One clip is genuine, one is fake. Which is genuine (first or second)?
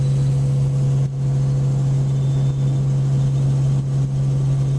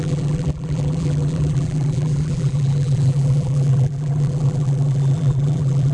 first